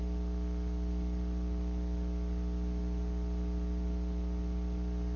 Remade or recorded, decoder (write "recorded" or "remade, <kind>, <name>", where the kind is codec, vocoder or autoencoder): recorded